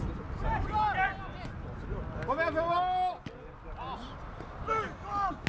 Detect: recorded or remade recorded